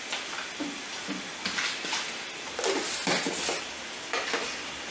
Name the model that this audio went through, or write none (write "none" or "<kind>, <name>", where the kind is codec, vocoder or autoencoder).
none